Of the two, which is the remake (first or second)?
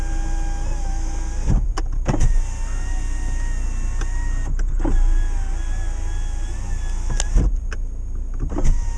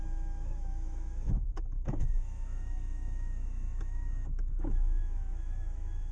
second